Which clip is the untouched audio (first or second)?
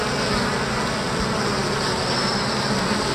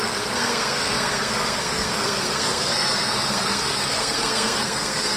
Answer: first